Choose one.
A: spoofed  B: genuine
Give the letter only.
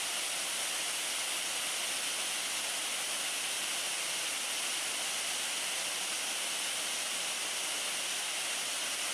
B